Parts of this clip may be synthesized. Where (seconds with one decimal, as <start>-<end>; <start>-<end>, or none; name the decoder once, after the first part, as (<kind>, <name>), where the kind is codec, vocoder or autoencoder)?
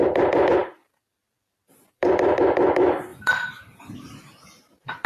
0.6-2.4 (vocoder, BigVGAN v2); 3.1-5.1